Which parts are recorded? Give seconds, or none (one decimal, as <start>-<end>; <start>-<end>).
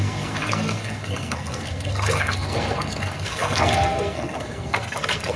none